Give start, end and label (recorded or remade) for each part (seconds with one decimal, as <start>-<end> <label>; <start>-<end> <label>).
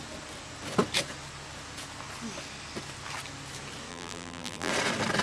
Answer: 0.0-3.9 recorded; 3.9-4.7 remade; 4.7-5.2 recorded